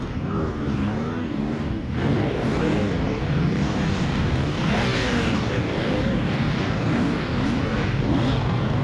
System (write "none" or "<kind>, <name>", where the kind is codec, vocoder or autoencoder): codec, DAC